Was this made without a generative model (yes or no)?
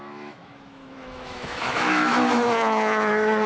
no